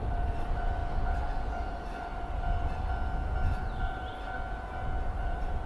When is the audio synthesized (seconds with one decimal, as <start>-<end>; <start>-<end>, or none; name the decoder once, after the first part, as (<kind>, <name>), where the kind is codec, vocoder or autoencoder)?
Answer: 0.0-0.8 (vocoder, BigVGAN v2); 1.6-2.1; 3.5-4.1; 5.2-5.7